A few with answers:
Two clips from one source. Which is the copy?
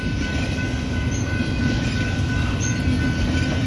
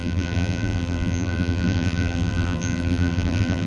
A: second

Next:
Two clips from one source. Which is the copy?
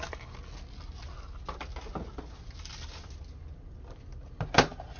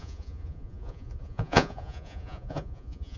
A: second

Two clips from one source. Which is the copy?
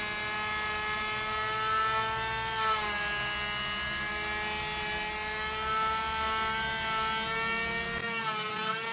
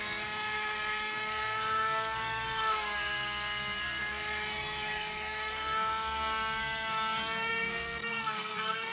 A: second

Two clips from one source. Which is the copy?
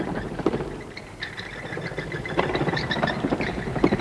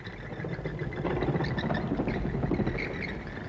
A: first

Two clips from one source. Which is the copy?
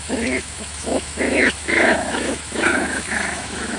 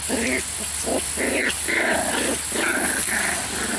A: first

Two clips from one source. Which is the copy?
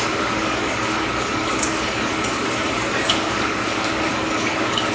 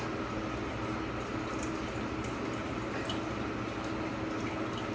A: first